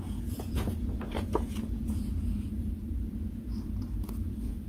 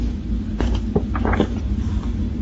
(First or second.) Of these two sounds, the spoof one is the first